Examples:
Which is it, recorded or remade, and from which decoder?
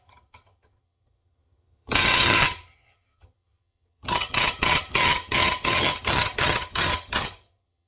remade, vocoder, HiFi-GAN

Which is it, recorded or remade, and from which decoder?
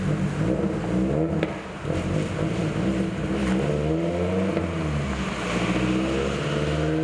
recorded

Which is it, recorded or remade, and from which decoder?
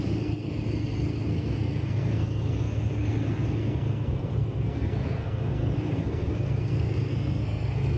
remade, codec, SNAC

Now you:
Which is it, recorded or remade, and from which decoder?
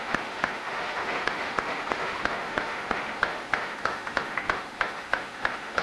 remade, autoencoder, DAC-VAE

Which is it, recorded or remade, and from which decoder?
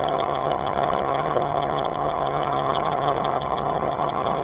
remade, vocoder, HiFi-GAN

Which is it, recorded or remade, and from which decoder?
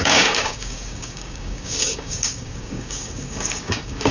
remade, codec, DAC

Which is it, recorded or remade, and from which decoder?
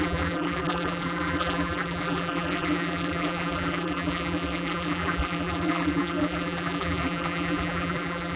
remade, vocoder, BigVGAN v2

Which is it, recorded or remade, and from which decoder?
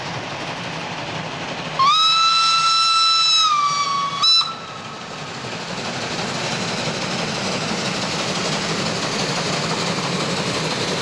recorded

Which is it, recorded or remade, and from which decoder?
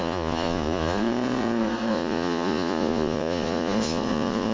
remade, vocoder, Vocos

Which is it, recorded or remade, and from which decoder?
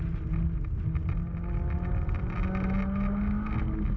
recorded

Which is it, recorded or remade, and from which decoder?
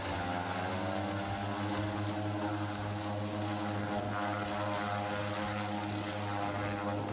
recorded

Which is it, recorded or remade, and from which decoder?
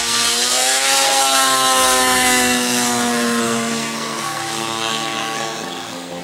remade, codec, SNAC